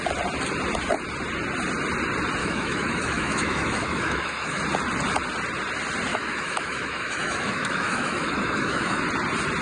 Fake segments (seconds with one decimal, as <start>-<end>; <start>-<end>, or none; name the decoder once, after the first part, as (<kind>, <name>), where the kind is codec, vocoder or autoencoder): 2.4-4.6 (autoencoder, DAC-VAE); 6.1-9.0